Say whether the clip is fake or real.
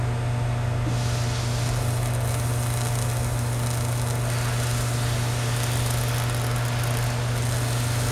real